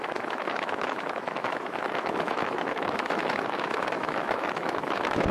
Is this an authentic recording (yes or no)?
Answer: no